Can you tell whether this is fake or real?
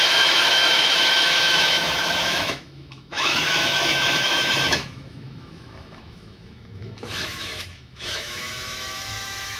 fake